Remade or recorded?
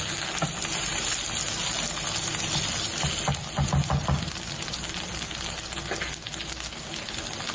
recorded